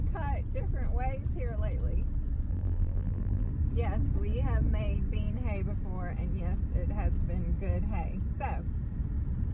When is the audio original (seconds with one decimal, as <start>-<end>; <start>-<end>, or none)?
0.0-2.5; 3.5-9.5